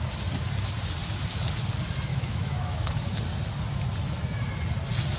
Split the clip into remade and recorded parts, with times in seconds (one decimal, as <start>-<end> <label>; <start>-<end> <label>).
0.0-2.1 recorded; 2.1-3.2 remade; 3.2-5.2 recorded